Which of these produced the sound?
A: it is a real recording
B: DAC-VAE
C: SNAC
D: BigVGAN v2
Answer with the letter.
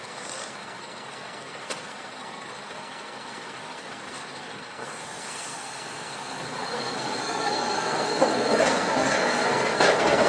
C